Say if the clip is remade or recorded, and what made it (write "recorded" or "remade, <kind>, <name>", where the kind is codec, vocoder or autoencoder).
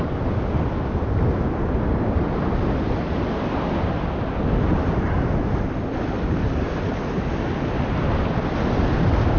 recorded